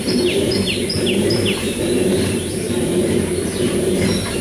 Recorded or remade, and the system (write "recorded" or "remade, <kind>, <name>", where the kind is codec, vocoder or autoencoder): remade, vocoder, BigVGAN v2